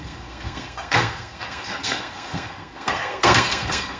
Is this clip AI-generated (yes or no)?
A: yes